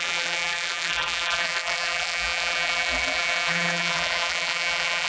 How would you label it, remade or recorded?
remade